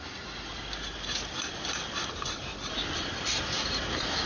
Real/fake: real